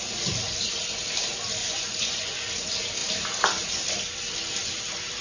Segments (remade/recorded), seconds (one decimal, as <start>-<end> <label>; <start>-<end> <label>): 0.0-1.6 recorded; 1.6-2.5 remade; 2.5-5.2 recorded